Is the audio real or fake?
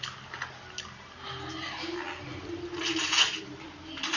real